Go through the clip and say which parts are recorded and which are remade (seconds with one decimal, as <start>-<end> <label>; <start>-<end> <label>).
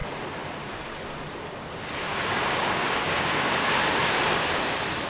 0.0-2.0 recorded; 2.0-3.9 remade; 3.9-5.1 recorded